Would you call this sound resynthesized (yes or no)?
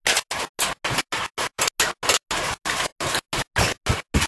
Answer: no